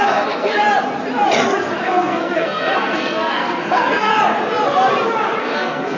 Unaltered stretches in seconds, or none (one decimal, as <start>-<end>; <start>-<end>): 0.6-1.8; 4.1-5.4